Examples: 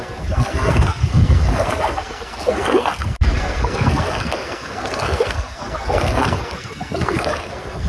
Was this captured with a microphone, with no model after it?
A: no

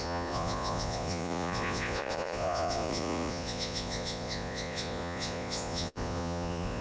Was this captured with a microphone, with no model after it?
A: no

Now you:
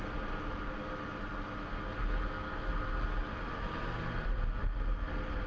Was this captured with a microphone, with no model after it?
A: yes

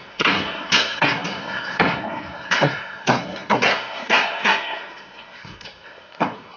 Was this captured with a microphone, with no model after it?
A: no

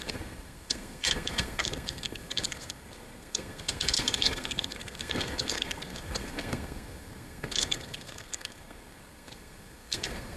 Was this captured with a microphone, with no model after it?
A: no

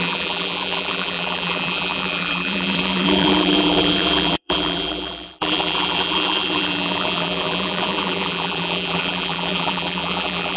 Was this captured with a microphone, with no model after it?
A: no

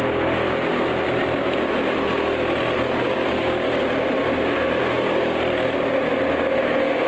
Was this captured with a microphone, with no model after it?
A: yes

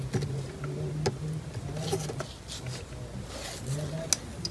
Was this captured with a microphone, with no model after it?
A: yes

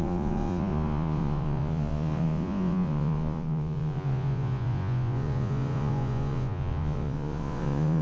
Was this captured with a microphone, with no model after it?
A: no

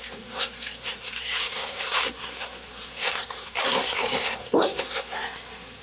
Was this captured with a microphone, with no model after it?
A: no